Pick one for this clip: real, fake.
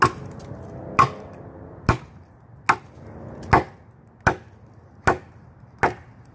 real